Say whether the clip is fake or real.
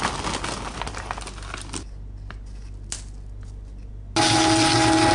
real